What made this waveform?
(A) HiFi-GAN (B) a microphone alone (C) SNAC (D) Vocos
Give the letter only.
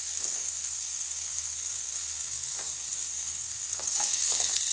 C